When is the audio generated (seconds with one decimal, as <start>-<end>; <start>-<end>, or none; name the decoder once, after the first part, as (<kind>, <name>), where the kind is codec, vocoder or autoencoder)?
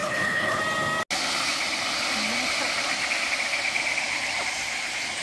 0.0-0.6 (codec, HILCodec)